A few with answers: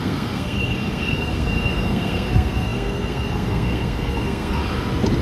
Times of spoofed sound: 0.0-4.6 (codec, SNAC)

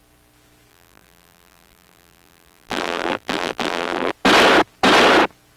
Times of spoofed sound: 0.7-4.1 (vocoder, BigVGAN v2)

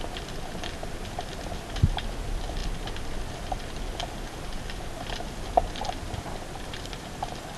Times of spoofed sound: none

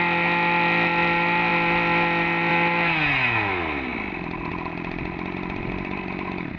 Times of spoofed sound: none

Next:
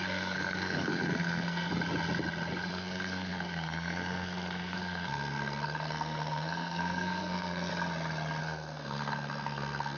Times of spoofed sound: 0.0-1.7 (codec, SNAC); 2.7-7.7; 8.4-10.0